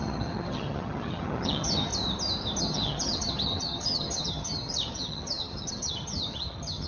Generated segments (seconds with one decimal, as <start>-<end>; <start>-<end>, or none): 0.0-1.9; 2.6-6.9